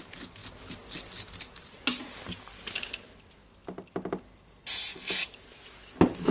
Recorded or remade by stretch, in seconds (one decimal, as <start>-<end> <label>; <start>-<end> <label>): 0.0-6.3 recorded